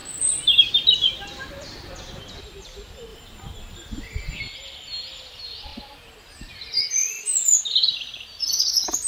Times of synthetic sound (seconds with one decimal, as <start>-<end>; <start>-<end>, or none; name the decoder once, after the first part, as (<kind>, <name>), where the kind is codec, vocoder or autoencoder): 0.0-2.2 (vocoder, BigVGAN v2); 3.1-4.4; 7.0-7.6